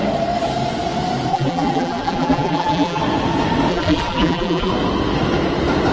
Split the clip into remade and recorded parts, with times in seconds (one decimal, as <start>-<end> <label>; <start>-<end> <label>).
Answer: 0.0-1.3 recorded; 1.3-3.0 remade; 3.0-3.7 recorded; 3.7-4.7 remade; 4.7-5.9 recorded